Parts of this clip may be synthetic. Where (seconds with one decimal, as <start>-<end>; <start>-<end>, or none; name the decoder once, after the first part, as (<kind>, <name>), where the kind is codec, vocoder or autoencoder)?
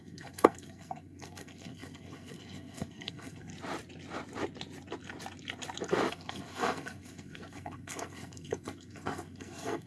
0.0-3.5 (codec, SNAC); 6.1-9.9